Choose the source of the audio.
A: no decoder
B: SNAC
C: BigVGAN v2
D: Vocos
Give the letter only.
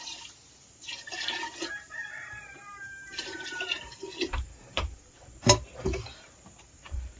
C